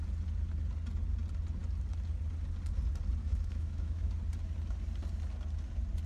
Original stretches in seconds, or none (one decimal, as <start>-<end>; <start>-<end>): 0.0-3.2; 4.1-6.1